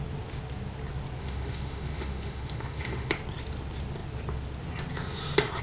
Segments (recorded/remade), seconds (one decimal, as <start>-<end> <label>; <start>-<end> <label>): 0.0-1.2 recorded; 1.2-3.1 remade; 3.1-5.6 recorded